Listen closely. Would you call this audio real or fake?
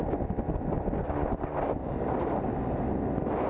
real